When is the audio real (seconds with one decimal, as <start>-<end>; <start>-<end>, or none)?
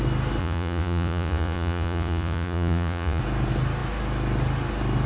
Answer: 0.0-0.4; 3.2-5.1